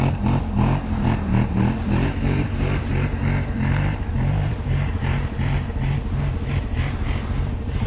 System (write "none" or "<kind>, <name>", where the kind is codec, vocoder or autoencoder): vocoder, BigVGAN v2